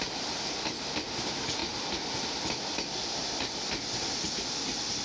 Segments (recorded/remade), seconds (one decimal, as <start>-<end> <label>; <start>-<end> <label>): 0.0-5.0 recorded